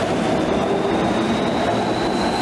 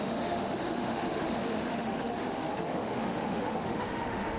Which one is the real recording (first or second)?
first